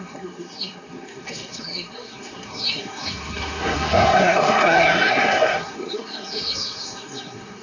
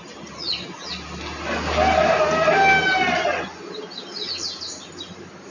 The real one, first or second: second